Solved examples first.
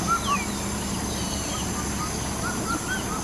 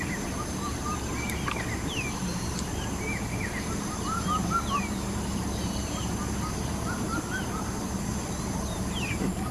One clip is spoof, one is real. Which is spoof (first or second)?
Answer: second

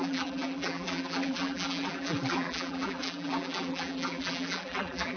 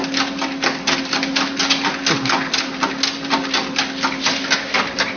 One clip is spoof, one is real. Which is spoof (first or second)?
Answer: first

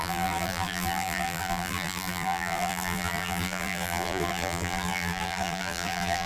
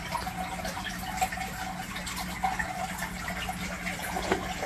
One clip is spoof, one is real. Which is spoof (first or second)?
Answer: first